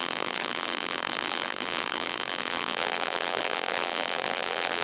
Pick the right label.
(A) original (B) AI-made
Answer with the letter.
B